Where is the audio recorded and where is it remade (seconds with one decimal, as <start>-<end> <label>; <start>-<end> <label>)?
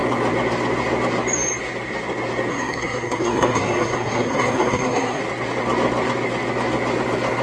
0.0-2.5 recorded; 2.5-5.2 remade; 5.2-7.4 recorded